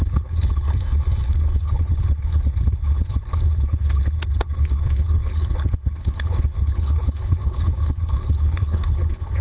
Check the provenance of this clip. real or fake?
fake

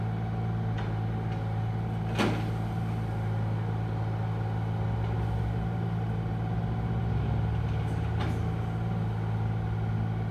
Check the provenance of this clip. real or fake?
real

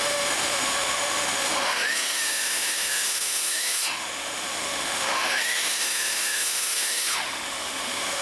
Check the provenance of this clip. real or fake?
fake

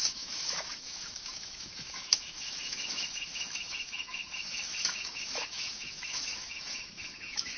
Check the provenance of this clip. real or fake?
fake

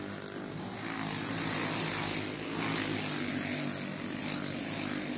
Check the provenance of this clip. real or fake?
real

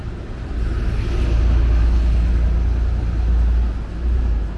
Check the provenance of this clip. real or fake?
real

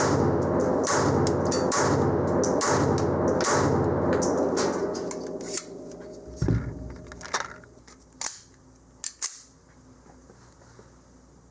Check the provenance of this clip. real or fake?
real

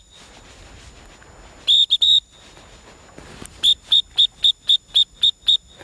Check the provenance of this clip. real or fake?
real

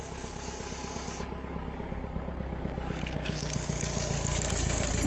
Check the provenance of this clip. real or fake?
fake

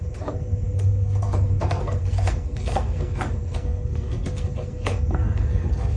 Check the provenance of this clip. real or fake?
fake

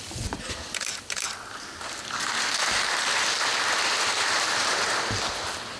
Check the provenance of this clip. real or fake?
real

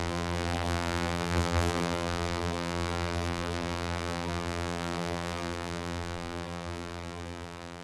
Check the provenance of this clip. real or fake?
fake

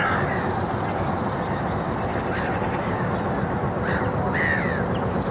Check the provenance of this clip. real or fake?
real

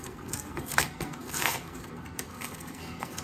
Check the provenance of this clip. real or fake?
fake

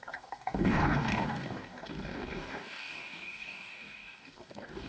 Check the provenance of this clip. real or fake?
fake